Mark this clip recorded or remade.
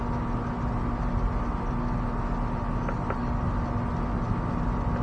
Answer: recorded